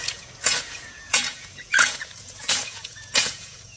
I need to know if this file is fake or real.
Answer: fake